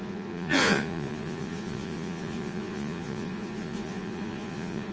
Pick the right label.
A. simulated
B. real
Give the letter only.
A